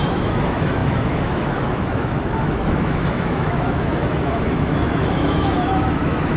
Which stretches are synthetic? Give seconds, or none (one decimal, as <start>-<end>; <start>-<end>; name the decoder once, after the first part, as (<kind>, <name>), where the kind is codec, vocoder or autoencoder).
0.0-6.4 (autoencoder, DAC-VAE)